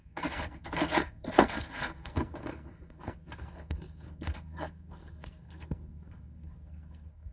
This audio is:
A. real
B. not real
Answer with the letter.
B